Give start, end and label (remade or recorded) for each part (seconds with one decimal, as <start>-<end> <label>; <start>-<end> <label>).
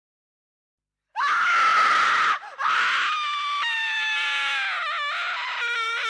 0.0-4.5 remade; 4.5-5.6 recorded; 5.6-6.1 remade